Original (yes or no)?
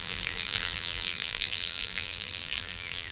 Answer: no